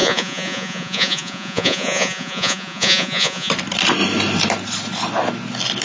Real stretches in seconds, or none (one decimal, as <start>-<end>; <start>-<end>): 3.5-5.8